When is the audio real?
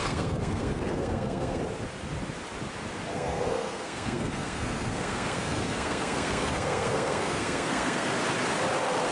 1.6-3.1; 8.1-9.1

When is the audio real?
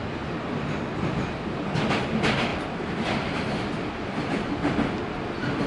0.0-5.7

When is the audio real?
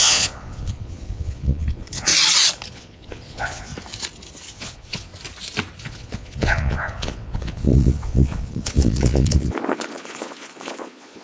2.1-2.7; 3.7-4.5; 5.1-5.8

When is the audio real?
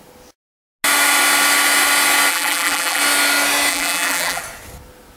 0.0-2.3; 3.0-3.7; 4.4-5.2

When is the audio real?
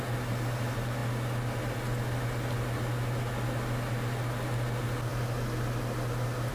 0.0-6.5